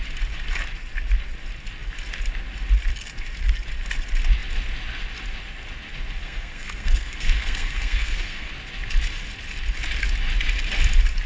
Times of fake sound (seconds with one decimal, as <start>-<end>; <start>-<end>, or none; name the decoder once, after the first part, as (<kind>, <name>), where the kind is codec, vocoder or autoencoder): 6.2-8.5 (codec, SNAC)